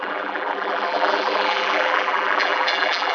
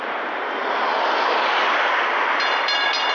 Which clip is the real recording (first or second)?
second